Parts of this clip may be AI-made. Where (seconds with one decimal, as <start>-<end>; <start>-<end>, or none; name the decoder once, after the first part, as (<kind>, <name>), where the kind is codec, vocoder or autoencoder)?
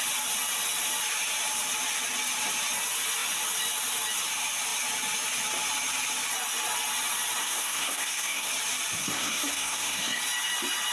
7.4-8.5 (codec, SNAC); 9.0-10.2